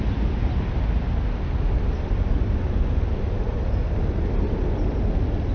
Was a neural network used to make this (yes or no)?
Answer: no